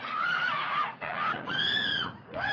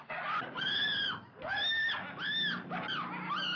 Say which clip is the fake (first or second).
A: first